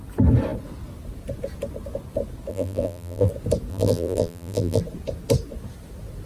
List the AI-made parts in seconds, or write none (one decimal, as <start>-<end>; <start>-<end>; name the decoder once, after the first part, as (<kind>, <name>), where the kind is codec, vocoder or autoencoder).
2.5-3.3 (vocoder, BigVGAN v2); 3.7-4.8